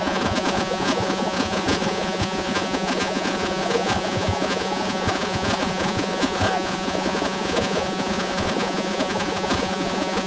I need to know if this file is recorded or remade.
remade